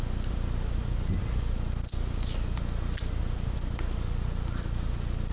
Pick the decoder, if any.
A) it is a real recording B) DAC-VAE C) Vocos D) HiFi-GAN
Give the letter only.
A